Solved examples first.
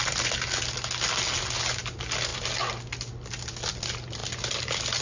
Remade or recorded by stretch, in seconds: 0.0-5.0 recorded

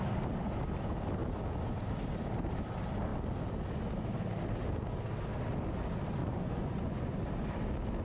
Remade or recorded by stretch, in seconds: 0.0-6.2 recorded; 6.2-7.2 remade; 7.2-8.0 recorded

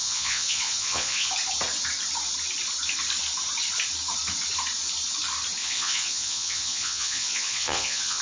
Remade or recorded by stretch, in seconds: 0.0-1.3 remade; 1.3-5.6 recorded; 5.6-8.2 remade

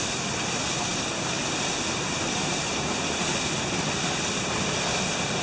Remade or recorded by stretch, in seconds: 0.0-5.4 recorded

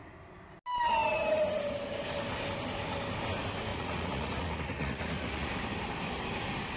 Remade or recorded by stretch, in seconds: 0.0-3.7 recorded; 3.7-5.5 remade; 5.5-6.8 recorded

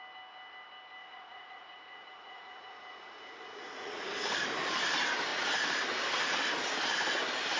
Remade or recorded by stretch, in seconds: 0.0-1.0 recorded; 1.0-4.1 remade; 4.1-7.6 recorded

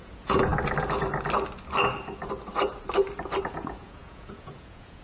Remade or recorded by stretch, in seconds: 0.0-0.5 remade; 0.5-3.5 recorded; 3.5-5.0 remade

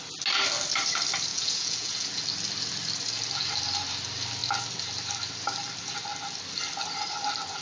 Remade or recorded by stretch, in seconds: 0.0-1.3 recorded; 1.3-2.2 remade; 2.2-7.6 recorded